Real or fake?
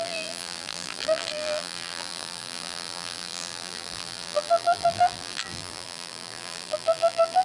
fake